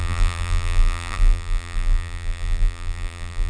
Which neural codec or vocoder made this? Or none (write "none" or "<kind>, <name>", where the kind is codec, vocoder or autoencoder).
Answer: vocoder, BigVGAN v2